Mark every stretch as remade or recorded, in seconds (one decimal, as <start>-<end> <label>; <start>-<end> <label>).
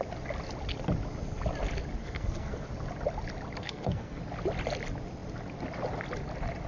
0.0-2.0 recorded; 2.0-2.7 remade; 2.7-3.6 recorded; 3.6-4.2 remade; 4.2-6.7 recorded